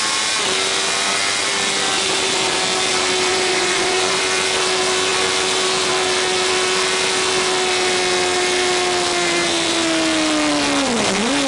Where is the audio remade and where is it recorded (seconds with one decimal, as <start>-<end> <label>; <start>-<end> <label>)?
0.0-3.3 recorded; 3.3-4.2 remade; 4.2-11.5 recorded